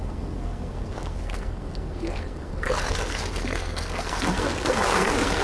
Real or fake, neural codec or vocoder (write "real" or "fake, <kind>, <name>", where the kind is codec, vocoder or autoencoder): fake, codec, SNAC